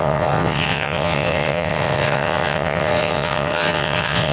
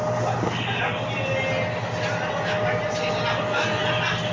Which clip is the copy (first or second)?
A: first